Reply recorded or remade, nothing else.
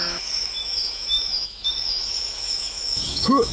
remade